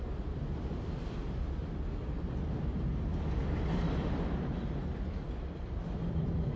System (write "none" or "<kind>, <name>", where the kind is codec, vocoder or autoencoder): none